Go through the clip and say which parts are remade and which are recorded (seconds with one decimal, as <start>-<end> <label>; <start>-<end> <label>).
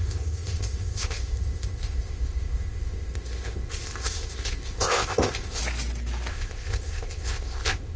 0.0-5.6 remade; 5.6-6.3 recorded; 6.3-8.0 remade